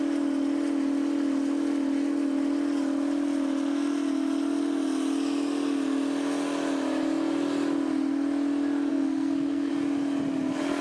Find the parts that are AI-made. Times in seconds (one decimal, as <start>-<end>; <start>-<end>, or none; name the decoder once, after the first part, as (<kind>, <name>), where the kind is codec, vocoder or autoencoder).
8.9-9.7 (codec, SNAC)